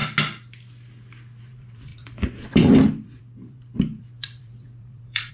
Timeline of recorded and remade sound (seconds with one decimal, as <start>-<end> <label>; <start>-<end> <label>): 0.0-1.4 recorded; 1.4-5.3 remade